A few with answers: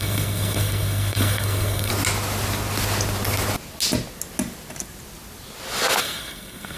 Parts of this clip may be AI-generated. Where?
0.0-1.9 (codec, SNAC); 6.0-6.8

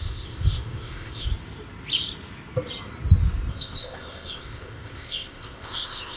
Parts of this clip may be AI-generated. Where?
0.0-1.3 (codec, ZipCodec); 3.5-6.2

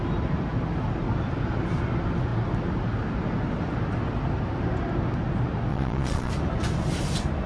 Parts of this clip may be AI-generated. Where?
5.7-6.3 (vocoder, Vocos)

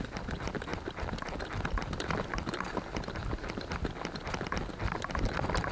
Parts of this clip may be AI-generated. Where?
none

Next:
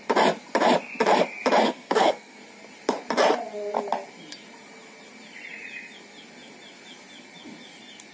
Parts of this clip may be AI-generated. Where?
1.6-2.4 (codec, SNAC)